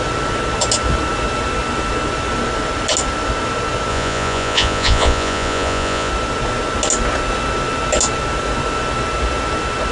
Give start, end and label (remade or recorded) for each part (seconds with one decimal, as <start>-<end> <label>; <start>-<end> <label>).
0.0-3.9 recorded; 3.9-6.1 remade; 6.1-9.9 recorded